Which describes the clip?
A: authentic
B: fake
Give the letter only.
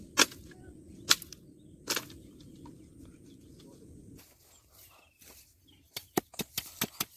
A